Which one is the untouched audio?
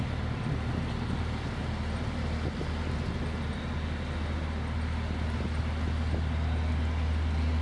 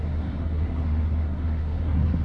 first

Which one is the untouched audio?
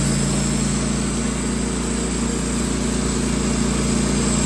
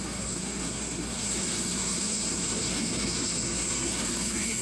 first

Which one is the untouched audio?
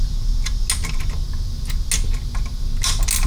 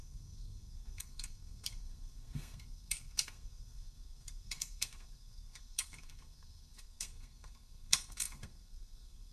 first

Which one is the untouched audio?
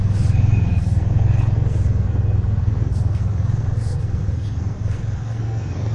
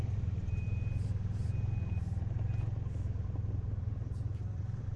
second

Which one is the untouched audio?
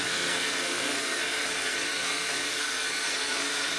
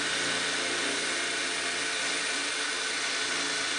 second